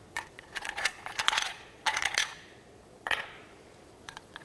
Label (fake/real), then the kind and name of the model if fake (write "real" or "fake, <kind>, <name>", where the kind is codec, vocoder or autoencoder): fake, vocoder, Vocos